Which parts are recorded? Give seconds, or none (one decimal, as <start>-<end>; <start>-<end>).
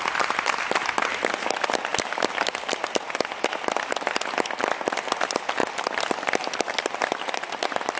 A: 0.0-1.9; 2.8-5.6